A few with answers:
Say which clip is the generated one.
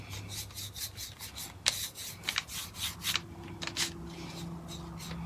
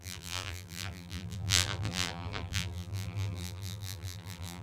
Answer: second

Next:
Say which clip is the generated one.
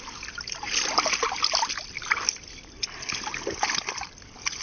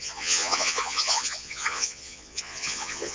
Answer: second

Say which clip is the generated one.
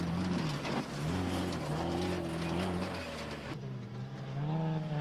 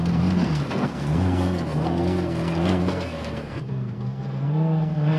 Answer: second